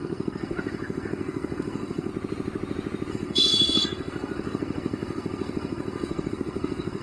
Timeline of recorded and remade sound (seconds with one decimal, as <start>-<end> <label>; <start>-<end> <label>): 0.0-2.1 remade; 2.1-3.1 recorded; 3.1-7.0 remade